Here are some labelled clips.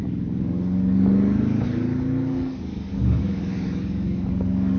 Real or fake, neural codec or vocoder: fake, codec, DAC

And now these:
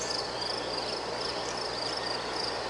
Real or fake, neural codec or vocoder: real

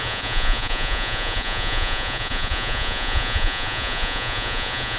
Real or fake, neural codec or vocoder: fake, vocoder, Vocos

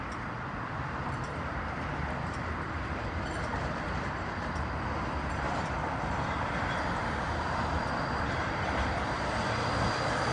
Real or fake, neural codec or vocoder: fake, vocoder, BigVGAN v2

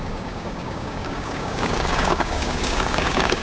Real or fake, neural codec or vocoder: fake, codec, DAC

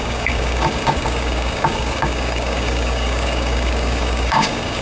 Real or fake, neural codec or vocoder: fake, codec, DAC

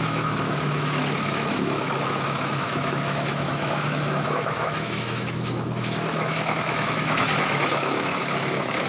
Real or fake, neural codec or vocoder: fake, autoencoder, DAC-VAE